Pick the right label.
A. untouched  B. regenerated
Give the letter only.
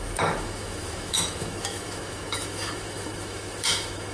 B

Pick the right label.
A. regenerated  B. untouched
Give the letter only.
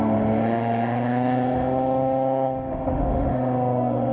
A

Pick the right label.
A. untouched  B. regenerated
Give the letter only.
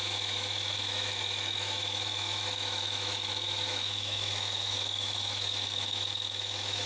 B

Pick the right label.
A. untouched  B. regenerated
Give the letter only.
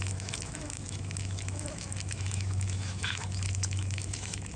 B